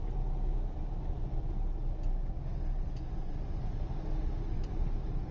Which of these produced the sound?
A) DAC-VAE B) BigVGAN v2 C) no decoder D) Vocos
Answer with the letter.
C